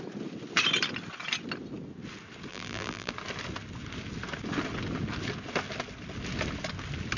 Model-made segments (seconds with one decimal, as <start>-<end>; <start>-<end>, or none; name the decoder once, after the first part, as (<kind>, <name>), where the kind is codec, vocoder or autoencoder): 2.5-3.1 (vocoder, BigVGAN v2)